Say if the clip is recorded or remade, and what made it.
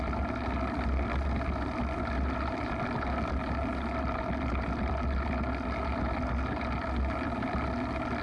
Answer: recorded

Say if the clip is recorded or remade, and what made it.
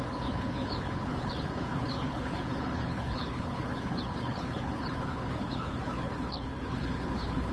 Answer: remade, codec, HILCodec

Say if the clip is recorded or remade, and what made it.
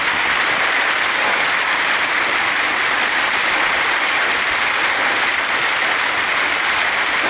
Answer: remade, vocoder, BigVGAN v2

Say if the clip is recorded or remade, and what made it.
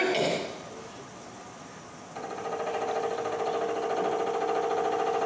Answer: recorded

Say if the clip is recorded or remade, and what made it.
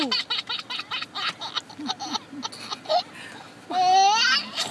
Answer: recorded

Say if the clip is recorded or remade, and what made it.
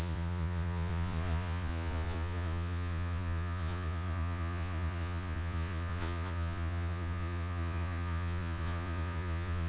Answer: remade, vocoder, Vocos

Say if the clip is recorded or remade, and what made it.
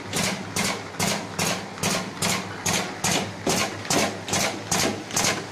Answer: recorded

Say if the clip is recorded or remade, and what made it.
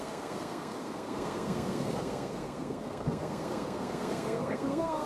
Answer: remade, codec, SNAC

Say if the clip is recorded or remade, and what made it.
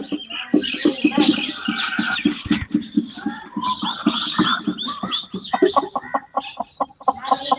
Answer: recorded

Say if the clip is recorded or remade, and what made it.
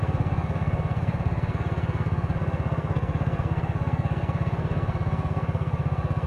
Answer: remade, codec, SNAC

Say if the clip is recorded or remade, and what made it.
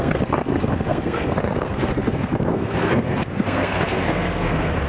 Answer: remade, codec, SNAC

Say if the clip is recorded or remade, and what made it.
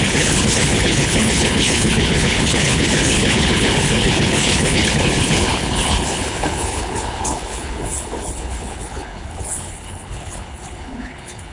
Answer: remade, codec, HILCodec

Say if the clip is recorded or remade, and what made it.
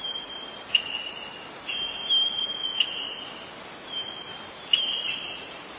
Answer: recorded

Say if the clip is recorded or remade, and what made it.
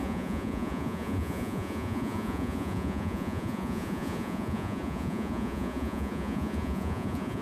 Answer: remade, vocoder, Vocos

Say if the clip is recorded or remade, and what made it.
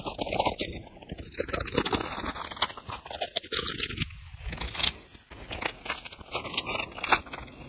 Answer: recorded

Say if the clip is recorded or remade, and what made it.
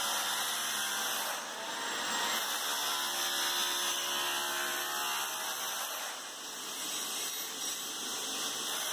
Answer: recorded